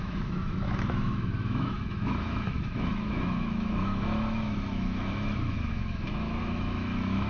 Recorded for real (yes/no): no